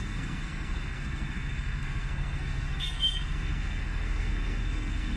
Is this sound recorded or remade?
remade